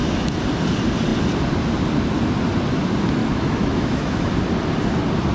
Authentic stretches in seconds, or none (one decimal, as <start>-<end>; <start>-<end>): 0.0-3.2; 4.3-5.3